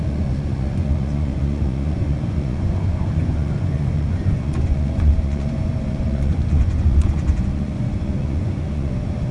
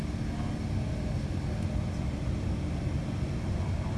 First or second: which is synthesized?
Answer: first